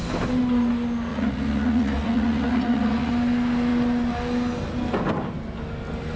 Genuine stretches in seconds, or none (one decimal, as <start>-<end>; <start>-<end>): 0.0-1.1; 3.1-6.2